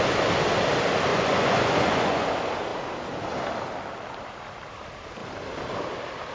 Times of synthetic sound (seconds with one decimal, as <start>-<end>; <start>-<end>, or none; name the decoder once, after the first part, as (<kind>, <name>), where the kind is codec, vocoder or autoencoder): 1.1-2.3 (vocoder, Vocos)